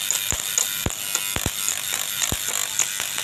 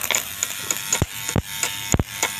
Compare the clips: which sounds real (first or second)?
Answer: first